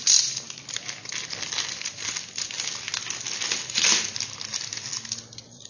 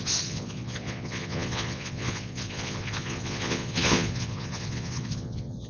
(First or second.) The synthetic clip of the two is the second